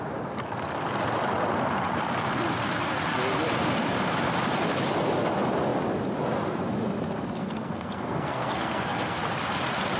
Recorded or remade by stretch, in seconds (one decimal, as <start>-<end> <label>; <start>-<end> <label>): 0.0-7.4 recorded; 7.4-9.2 remade; 9.2-10.0 recorded